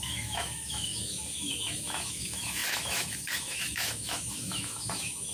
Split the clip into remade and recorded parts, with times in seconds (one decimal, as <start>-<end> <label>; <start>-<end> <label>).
0.0-5.3 remade